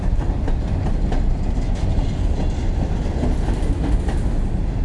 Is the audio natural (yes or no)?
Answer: yes